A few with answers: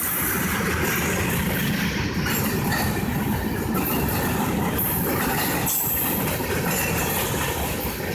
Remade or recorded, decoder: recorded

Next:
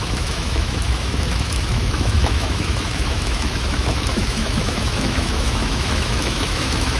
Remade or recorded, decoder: remade, autoencoder, DAC-VAE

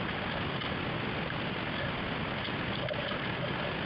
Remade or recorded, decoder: recorded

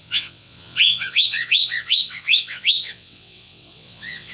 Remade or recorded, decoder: remade, vocoder, WaveNeXt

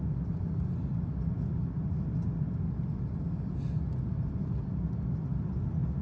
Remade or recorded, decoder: recorded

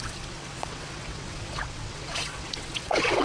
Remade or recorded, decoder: remade, vocoder, WaveNeXt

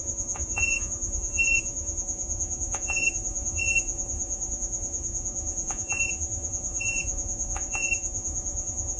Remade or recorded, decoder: remade, vocoder, Vocos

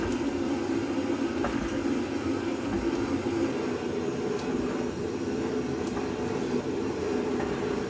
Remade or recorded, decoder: recorded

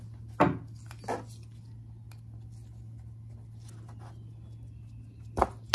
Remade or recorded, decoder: recorded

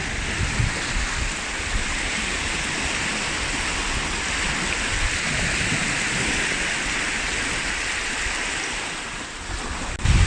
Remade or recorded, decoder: recorded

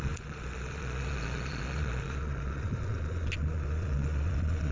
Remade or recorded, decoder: remade, vocoder, Vocos